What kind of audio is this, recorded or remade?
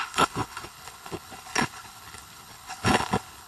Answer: remade